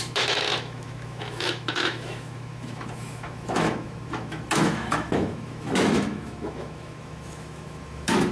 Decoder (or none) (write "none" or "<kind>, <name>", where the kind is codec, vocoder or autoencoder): autoencoder, DAC-VAE